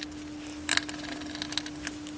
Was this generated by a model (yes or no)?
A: no